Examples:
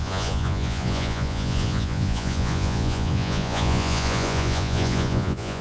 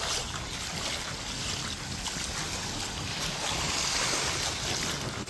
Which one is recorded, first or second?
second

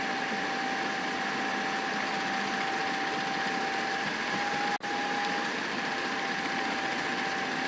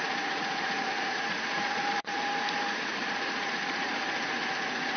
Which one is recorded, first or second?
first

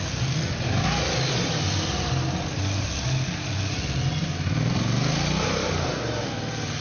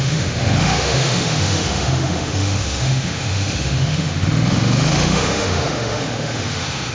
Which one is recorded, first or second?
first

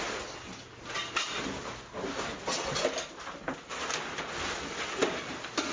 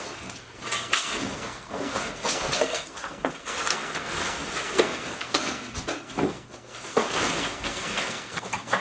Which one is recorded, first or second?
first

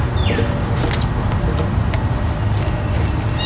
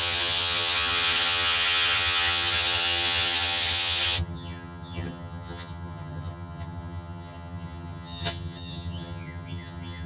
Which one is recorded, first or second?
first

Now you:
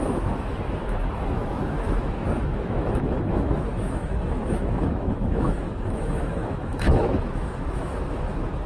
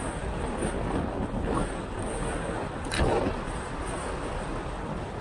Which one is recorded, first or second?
second